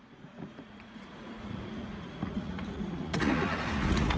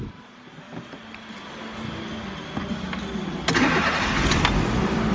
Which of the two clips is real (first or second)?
second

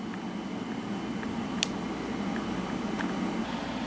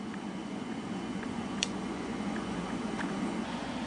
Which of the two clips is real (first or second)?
first